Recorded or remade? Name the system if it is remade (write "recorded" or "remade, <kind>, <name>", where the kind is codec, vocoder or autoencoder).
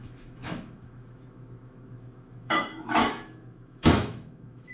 remade, autoencoder, DAC-VAE